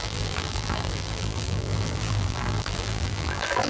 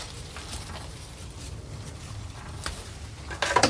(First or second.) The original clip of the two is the second